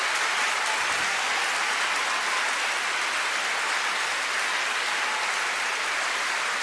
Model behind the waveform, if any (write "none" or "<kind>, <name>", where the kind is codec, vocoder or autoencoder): none